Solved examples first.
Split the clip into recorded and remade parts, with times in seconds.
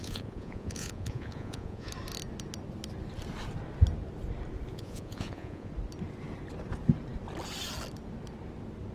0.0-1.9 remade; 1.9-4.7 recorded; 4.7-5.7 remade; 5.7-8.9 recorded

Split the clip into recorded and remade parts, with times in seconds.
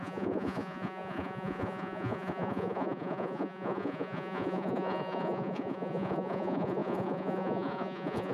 0.0-8.3 remade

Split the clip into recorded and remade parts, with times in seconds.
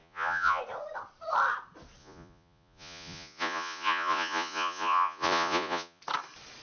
0.0-0.6 remade; 0.6-2.0 recorded; 2.0-6.0 remade; 6.0-6.6 recorded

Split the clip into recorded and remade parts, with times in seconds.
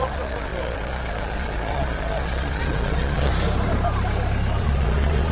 0.0-3.3 remade; 3.3-4.6 recorded; 4.6-5.3 remade